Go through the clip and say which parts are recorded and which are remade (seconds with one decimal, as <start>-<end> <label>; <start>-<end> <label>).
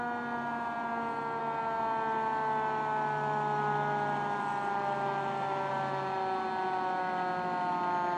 0.0-8.2 recorded